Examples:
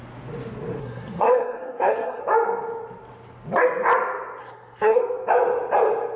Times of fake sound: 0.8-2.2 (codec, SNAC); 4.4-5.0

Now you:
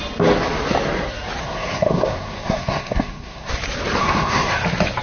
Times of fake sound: 1.4-3.5 (codec, SNAC); 4.0-4.5